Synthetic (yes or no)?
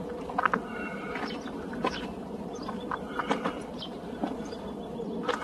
no